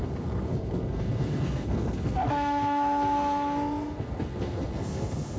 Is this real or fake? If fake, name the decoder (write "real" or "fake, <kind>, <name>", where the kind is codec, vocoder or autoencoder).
fake, codec, SNAC